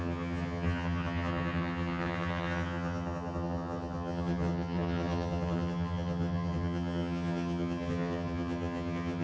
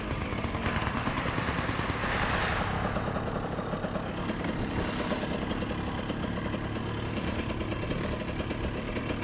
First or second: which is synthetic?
first